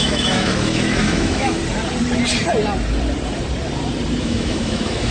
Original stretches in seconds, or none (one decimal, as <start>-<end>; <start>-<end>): 1.6-4.2